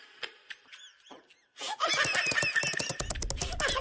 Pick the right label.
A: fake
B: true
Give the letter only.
B